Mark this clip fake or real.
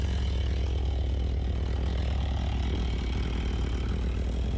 real